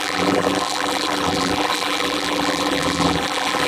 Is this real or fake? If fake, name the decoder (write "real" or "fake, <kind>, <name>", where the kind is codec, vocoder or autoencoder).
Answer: fake, vocoder, BigVGAN v2